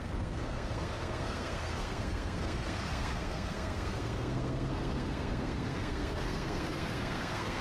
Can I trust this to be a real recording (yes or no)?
no